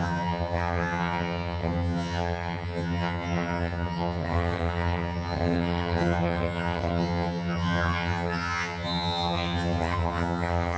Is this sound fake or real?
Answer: fake